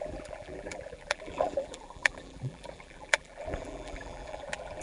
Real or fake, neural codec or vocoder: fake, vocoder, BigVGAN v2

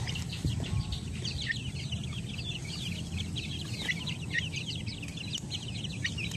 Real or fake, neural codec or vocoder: fake, vocoder, BigVGAN v2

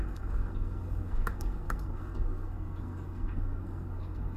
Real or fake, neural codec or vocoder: fake, codec, SNAC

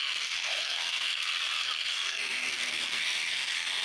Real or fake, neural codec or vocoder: fake, codec, SNAC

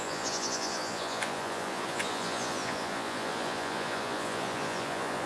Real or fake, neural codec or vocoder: fake, vocoder, Vocos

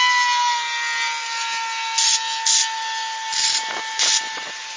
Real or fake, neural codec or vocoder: real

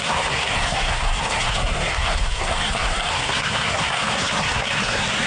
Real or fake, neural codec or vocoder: fake, codec, SNAC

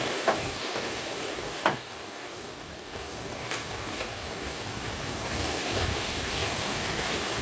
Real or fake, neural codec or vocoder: fake, codec, DAC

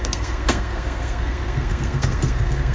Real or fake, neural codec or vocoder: fake, codec, SNAC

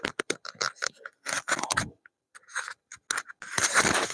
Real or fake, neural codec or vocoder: real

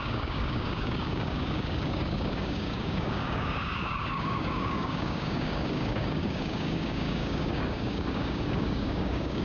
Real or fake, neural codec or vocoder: fake, codec, DAC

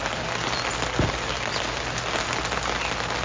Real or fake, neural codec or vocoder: real